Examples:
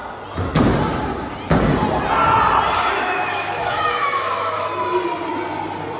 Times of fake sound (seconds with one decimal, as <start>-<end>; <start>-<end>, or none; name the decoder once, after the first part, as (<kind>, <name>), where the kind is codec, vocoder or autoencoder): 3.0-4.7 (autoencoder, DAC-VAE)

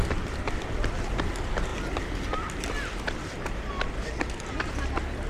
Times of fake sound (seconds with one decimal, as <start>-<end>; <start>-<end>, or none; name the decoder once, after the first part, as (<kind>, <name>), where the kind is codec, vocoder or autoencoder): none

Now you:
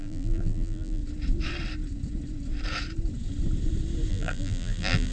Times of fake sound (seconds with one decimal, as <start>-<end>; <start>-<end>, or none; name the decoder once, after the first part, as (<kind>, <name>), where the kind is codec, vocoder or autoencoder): 0.0-1.0 (vocoder, BigVGAN v2); 4.1-5.1